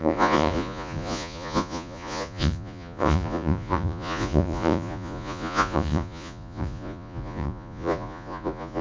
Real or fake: fake